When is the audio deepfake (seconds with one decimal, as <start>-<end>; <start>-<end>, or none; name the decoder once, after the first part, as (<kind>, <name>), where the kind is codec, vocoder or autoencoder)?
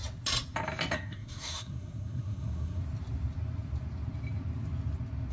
0.9-2.8 (codec, SNAC)